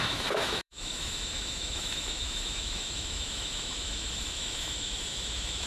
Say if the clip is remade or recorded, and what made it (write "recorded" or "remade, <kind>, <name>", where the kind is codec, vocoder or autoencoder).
remade, autoencoder, DAC-VAE